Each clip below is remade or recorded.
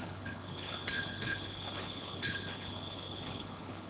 remade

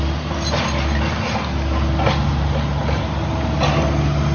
recorded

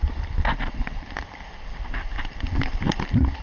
recorded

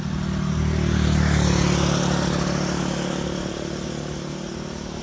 recorded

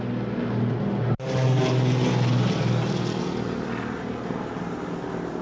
recorded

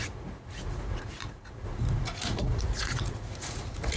remade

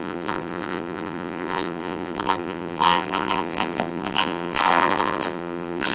remade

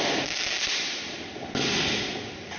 recorded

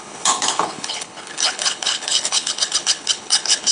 remade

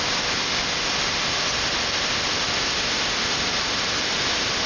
recorded